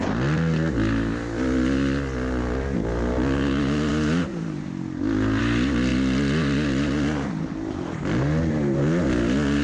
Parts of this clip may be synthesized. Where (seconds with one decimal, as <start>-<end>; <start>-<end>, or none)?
none